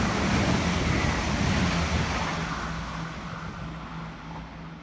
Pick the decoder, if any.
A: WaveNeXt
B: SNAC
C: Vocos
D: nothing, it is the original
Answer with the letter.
D